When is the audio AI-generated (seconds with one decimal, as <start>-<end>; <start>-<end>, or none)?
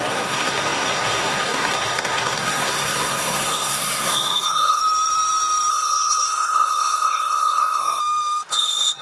0.0-4.8; 5.7-8.0; 8.5-9.0